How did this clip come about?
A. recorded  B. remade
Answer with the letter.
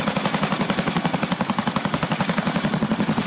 A